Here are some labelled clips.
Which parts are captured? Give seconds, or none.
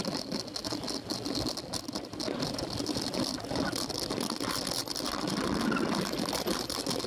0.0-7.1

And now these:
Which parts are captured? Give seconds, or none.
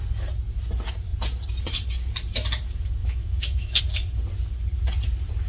0.0-3.0; 3.8-5.5